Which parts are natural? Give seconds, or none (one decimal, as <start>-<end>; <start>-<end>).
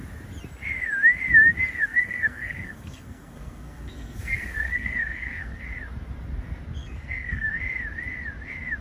0.0-1.8; 5.6-6.8; 7.6-8.8